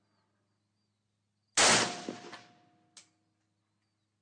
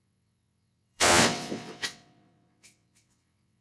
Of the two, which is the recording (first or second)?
first